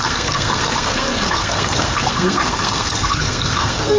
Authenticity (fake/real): fake